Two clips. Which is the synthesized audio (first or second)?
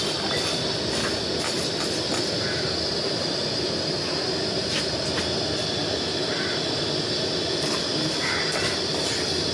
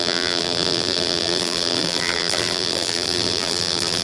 second